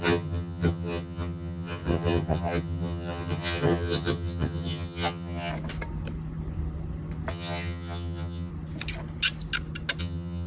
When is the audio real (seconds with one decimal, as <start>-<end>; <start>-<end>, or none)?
5.5-7.3; 8.5-10.0